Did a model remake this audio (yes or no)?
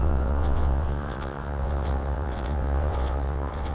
yes